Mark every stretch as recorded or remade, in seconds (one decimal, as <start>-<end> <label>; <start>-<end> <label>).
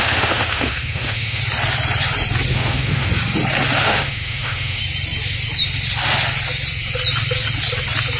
0.0-1.4 remade; 1.4-2.5 recorded; 2.5-3.1 remade; 3.1-3.8 recorded; 3.8-4.8 remade; 4.8-8.2 recorded